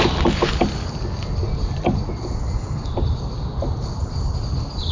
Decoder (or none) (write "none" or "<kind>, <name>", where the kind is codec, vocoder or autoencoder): none